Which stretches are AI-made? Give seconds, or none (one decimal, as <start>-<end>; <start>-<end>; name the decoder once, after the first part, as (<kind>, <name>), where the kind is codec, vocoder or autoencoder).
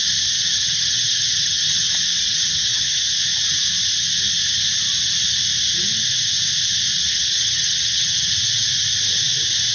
0.4-1.9 (vocoder, HiFi-GAN); 2.3-3.0; 7.0-8.3